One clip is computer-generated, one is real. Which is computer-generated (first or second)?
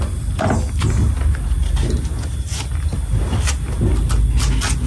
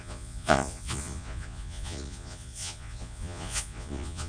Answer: second